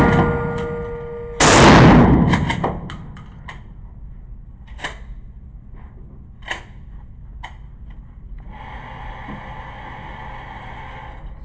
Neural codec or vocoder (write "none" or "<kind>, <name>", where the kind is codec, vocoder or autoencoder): none